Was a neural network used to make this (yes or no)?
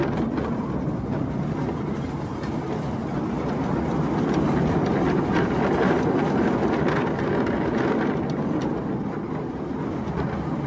no